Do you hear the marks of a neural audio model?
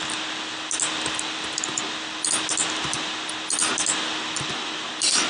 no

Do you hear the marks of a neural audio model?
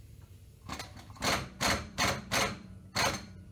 no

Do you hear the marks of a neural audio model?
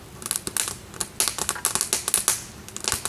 no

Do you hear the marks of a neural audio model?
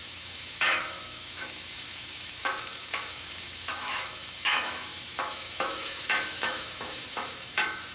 yes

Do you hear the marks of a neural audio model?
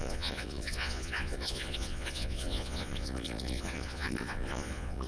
yes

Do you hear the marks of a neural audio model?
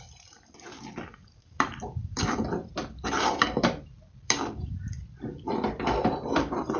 yes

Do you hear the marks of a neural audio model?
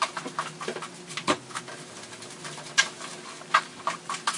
no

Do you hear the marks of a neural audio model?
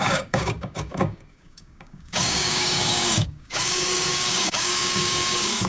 yes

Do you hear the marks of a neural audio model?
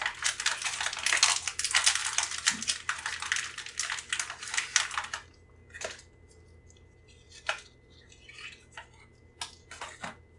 no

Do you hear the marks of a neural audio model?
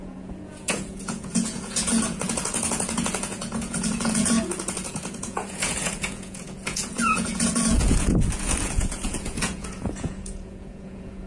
yes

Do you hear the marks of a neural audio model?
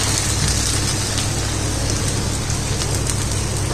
no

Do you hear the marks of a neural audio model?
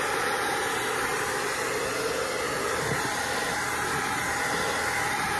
no